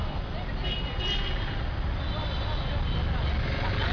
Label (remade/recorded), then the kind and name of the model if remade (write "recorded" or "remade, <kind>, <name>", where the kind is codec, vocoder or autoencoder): recorded